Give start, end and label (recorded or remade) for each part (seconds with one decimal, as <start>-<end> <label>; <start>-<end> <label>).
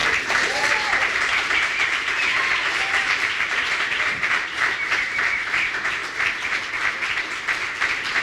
0.0-6.0 remade; 6.0-8.2 recorded